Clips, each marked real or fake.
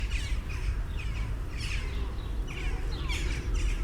real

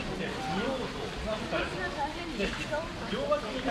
real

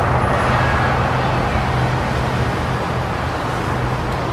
real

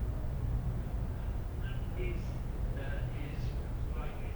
fake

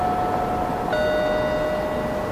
real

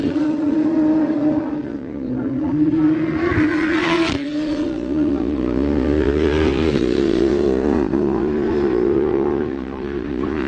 fake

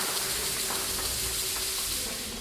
real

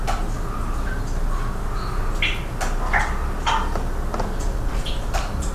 real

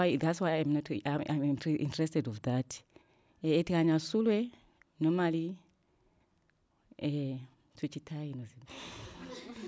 real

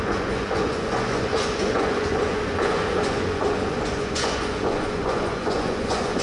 fake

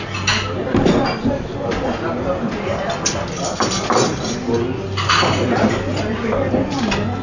real